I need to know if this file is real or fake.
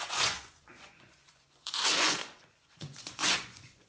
fake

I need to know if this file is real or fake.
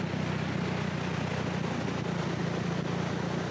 real